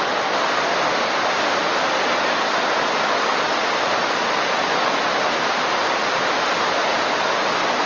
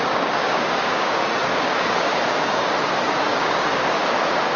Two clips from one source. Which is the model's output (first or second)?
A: second